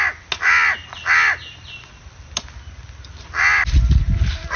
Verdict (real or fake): real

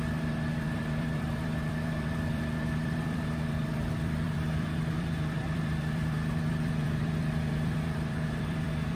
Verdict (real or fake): fake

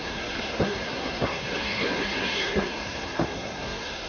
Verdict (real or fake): fake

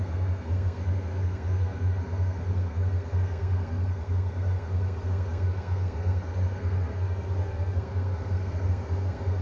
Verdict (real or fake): fake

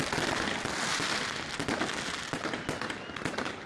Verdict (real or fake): real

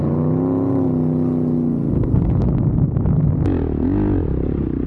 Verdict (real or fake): real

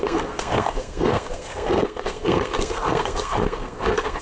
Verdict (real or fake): fake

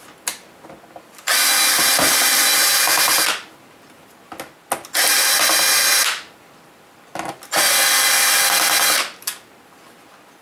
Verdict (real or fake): real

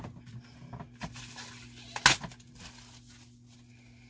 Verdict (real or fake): real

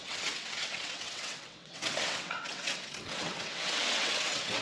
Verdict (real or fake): fake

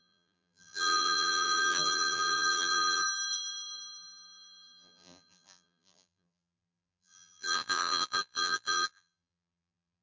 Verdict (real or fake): fake